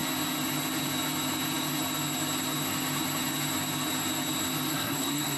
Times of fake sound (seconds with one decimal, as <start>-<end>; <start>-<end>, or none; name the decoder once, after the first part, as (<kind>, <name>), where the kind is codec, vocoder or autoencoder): 4.7-5.4 (codec, SNAC)